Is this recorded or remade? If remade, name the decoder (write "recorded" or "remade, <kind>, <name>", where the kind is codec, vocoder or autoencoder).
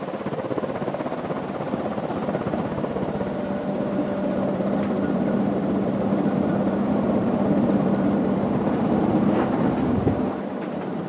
remade, vocoder, BigVGAN v2